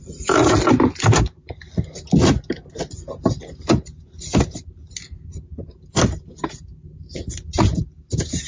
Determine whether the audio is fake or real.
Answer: real